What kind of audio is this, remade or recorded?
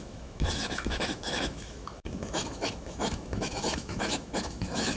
remade